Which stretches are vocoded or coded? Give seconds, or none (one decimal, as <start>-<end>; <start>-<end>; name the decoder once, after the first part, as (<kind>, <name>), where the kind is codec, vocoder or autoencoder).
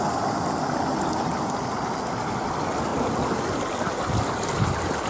none